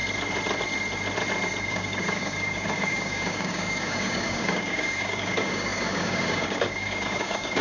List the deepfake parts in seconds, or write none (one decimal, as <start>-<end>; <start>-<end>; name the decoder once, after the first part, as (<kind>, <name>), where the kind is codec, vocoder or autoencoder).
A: 1.6-7.6 (codec, DAC)

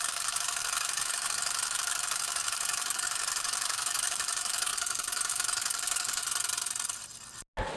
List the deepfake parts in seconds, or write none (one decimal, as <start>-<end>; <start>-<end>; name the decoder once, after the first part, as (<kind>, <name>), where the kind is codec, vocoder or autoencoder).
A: 0.0-6.2 (codec, DAC)